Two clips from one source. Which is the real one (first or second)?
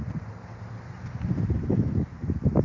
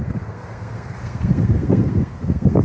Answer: first